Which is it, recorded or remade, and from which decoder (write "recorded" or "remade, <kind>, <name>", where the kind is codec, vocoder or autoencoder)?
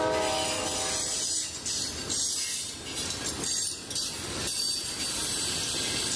recorded